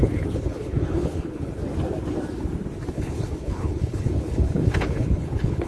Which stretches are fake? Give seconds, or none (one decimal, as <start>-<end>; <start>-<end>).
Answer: 0.0-1.6; 2.9-5.7